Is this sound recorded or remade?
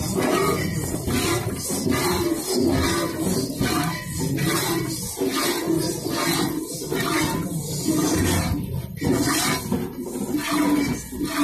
recorded